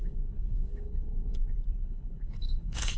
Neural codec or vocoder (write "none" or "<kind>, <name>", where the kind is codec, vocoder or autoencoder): codec, HILCodec